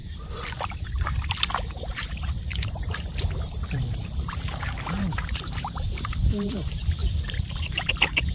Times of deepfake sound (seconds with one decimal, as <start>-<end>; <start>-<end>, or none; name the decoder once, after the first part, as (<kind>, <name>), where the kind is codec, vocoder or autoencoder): 1.7-8.3 (vocoder, BigVGAN v2)